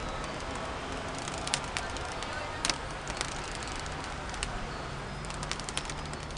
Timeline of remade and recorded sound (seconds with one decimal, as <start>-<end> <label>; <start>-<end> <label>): 0.0-6.4 recorded